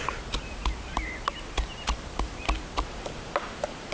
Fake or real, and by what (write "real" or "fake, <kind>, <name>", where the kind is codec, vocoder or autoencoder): real